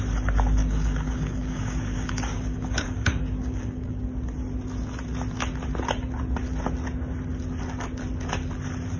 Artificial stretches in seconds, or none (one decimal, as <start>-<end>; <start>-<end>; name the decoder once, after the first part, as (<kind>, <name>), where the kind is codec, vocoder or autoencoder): 0.6-4.0 (codec, DAC)